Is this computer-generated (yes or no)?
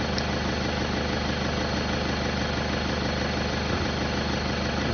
no